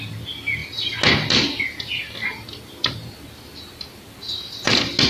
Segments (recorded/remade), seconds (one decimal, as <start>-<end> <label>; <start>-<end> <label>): 0.0-5.1 recorded